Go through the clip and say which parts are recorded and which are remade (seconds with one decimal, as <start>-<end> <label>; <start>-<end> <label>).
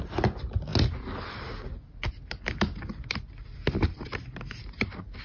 0.0-5.2 recorded